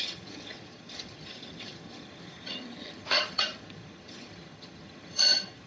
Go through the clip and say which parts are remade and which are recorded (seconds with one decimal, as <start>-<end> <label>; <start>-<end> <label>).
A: 0.0-5.7 remade